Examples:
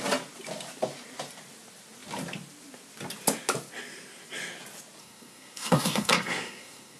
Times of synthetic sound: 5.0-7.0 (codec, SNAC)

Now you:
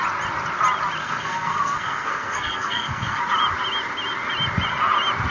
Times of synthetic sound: 1.0-3.2 (codec, SNAC)